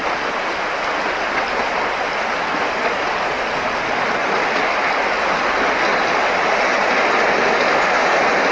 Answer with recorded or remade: recorded